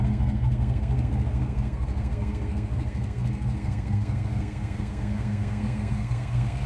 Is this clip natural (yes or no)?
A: no